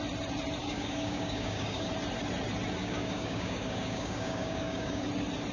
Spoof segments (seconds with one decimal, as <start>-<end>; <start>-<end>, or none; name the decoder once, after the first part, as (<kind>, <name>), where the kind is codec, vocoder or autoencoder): 0.6-1.9 (codec, DAC); 2.8-5.0